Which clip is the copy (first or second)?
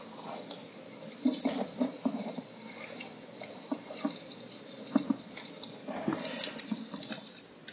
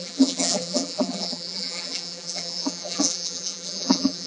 second